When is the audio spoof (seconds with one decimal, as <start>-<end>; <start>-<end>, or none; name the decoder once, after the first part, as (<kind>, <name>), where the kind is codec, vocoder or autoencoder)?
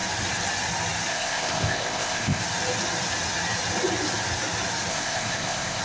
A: 1.1-2.4 (codec, ZipCodec); 4.9-5.8